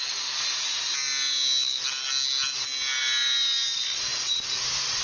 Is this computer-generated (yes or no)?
no